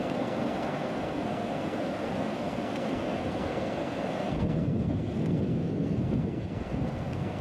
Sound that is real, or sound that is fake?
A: fake